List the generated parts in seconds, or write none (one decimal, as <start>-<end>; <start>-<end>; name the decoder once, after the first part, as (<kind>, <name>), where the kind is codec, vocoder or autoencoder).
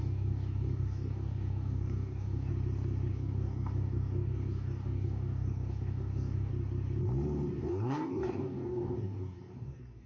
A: 0.0-2.5 (codec, DAC); 3.1-6.5; 7.6-10.1